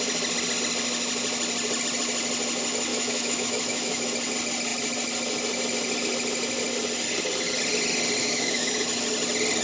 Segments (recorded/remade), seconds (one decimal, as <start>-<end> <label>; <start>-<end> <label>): 0.0-2.9 recorded; 2.9-4.1 remade; 4.1-8.2 recorded; 8.2-9.0 remade; 9.0-9.6 recorded

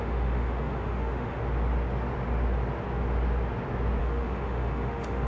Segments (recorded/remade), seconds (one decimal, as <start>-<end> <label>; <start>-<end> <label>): 0.0-1.4 remade; 1.4-4.0 recorded; 4.0-5.3 remade

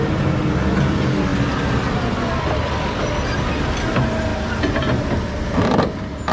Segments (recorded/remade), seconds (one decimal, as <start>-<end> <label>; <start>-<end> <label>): 0.0-1.3 recorded; 1.3-2.9 remade; 2.9-4.3 recorded; 4.3-5.0 remade; 5.0-6.3 recorded

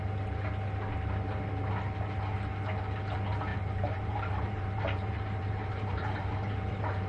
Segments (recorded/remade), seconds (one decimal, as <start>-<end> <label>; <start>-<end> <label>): 0.0-3.5 recorded; 3.5-7.1 remade

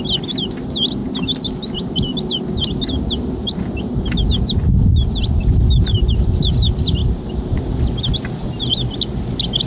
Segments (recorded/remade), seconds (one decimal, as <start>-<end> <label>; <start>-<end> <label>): 0.0-9.7 recorded

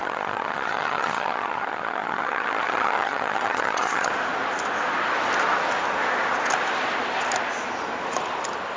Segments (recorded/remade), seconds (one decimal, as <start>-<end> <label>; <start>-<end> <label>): 0.0-4.1 remade; 4.1-8.8 recorded